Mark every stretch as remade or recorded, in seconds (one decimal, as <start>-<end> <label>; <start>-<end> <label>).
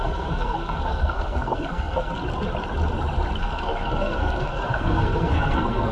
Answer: 0.0-2.2 remade; 2.2-3.4 recorded; 3.4-5.9 remade